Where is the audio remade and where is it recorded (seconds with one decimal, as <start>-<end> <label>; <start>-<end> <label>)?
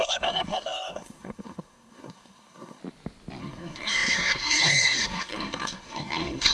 0.0-2.8 remade; 2.8-3.4 recorded; 3.4-6.5 remade